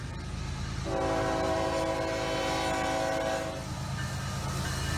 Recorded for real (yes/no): yes